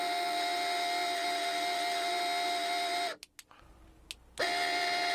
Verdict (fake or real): real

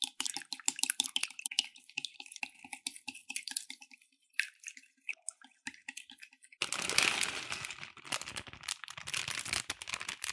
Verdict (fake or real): real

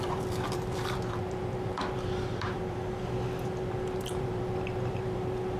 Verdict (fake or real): fake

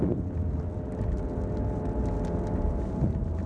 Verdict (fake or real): real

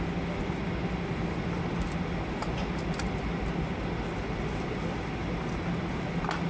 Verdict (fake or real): real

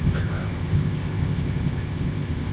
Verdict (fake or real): fake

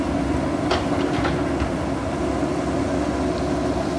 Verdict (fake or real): real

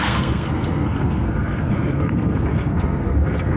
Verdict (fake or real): fake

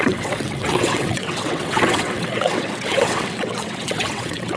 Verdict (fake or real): fake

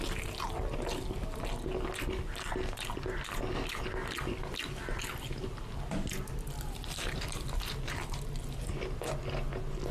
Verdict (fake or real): real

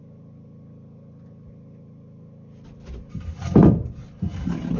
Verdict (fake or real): real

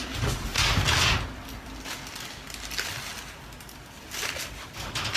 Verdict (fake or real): real